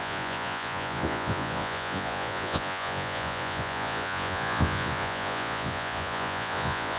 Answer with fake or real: fake